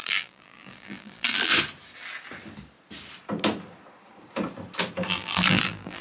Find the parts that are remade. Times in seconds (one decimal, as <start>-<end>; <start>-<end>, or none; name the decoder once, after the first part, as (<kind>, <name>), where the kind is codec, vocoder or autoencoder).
0.0-1.5 (vocoder, BigVGAN v2); 5.1-6.0